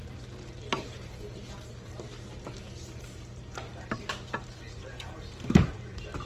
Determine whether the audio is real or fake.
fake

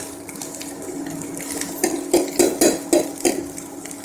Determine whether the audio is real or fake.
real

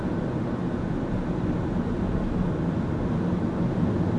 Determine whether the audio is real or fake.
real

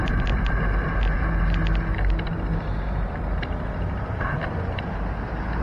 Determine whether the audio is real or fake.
real